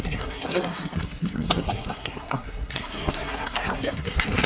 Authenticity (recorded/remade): remade